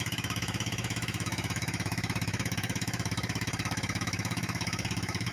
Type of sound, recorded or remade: remade